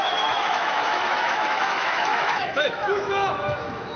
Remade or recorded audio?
remade